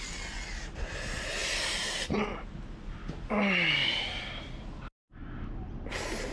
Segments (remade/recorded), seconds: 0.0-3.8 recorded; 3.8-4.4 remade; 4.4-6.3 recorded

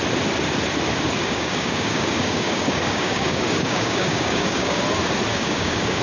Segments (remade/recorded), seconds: 0.0-1.2 recorded; 1.2-4.8 remade; 4.8-5.3 recorded; 5.3-6.0 remade

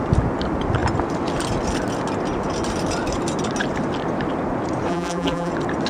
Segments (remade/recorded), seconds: 0.0-4.9 recorded; 4.9-5.5 remade; 5.5-5.9 recorded

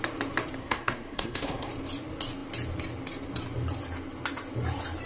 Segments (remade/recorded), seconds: 0.0-0.6 recorded; 0.6-1.7 remade; 1.7-5.1 recorded